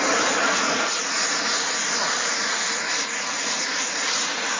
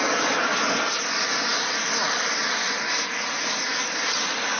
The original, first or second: second